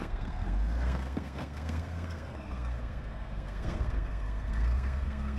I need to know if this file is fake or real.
fake